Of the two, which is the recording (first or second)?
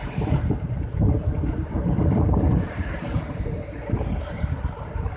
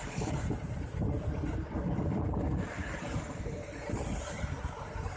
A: second